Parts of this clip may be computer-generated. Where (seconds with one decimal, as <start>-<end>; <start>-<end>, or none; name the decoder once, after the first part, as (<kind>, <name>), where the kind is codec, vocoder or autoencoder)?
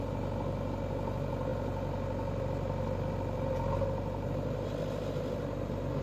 none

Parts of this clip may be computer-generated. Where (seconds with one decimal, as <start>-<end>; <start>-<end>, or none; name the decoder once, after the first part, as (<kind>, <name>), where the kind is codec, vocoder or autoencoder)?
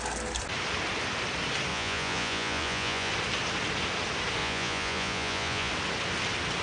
1.7-3.1 (vocoder, Vocos); 4.4-5.7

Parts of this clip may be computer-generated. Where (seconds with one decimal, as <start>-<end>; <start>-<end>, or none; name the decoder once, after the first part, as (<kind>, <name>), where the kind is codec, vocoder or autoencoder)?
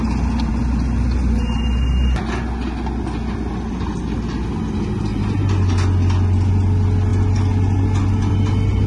none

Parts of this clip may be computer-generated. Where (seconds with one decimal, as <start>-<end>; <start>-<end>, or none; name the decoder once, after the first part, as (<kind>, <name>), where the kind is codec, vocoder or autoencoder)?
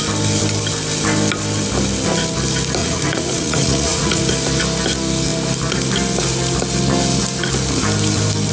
2.8-4.2 (vocoder, Vocos)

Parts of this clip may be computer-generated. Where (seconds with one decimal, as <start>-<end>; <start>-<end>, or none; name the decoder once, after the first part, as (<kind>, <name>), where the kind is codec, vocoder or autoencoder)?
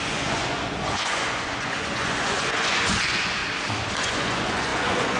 0.0-3.4 (vocoder, Vocos); 4.0-5.2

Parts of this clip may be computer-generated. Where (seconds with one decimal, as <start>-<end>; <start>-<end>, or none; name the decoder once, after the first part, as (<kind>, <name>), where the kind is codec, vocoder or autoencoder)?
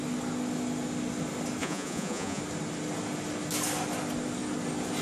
1.6-2.4 (vocoder, Vocos)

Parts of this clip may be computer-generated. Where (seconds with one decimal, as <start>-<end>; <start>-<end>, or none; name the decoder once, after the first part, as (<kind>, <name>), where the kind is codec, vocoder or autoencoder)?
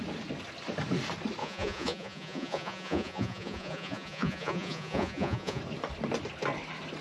1.4-5.6 (vocoder, Vocos)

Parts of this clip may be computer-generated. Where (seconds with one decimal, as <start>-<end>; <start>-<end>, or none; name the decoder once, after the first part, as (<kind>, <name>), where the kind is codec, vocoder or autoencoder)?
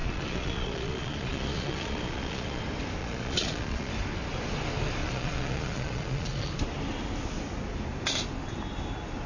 0.0-2.6 (vocoder, Vocos); 3.0-3.9; 5.0-6.5